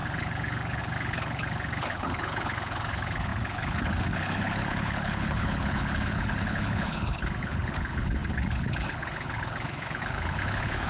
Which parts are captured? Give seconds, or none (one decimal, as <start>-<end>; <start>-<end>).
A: none